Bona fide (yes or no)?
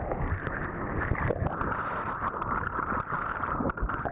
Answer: yes